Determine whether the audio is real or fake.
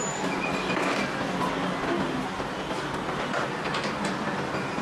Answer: real